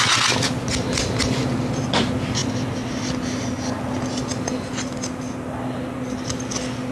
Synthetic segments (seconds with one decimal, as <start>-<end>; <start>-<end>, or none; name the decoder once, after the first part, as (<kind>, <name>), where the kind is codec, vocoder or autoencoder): none